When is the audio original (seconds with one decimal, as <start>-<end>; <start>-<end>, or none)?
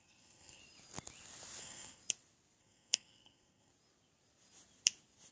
0.6-1.6; 2.0-2.6; 3.7-5.3